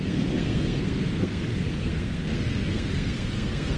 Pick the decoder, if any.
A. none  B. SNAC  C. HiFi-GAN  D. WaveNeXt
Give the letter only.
B